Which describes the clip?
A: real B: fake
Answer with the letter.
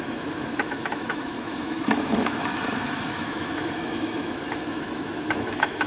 B